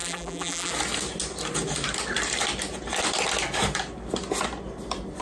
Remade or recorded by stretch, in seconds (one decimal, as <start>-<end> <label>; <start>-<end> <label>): 0.0-0.7 remade; 0.7-5.2 recorded